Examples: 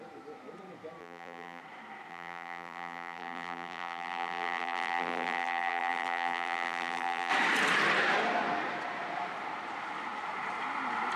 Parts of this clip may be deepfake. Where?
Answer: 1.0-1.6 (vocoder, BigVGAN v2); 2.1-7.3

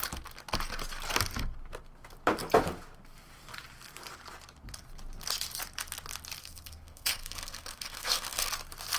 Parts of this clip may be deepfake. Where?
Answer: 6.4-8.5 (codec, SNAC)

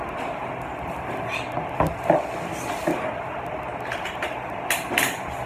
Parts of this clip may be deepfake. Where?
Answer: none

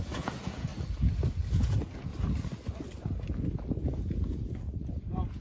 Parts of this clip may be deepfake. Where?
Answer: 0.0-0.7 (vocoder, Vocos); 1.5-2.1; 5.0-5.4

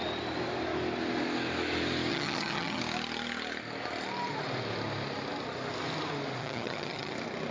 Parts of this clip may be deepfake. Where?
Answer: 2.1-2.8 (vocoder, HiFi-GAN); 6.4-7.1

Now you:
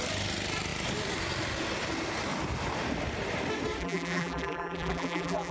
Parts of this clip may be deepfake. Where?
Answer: 3.8-5.5 (vocoder, BigVGAN v2)

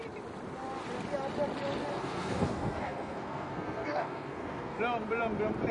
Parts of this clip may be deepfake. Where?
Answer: 1.9-4.8 (codec, SNAC)

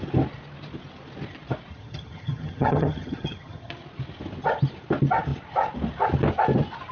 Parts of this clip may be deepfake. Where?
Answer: 1.7-3.7 (vocoder, HiFi-GAN)